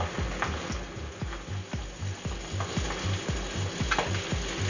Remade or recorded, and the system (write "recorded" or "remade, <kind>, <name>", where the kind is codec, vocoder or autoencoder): recorded